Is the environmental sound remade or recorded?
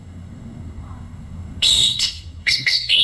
remade